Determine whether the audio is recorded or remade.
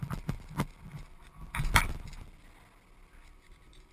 recorded